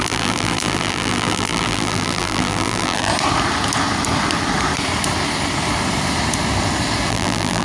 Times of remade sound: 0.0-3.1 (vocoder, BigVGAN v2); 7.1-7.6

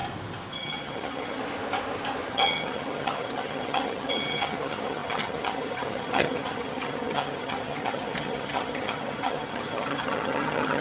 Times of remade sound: 0.5-1.4 (vocoder, HiFi-GAN); 2.3-10.8